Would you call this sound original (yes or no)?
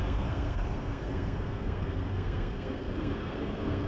no